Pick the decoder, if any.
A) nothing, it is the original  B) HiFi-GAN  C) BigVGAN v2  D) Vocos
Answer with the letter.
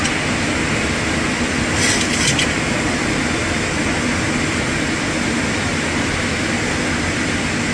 A